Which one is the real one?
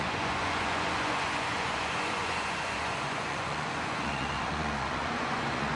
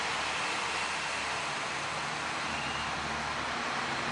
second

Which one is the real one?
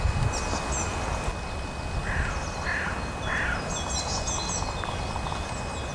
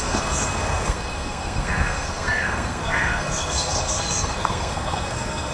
first